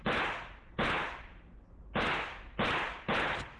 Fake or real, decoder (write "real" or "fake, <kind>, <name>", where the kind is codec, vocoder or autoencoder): real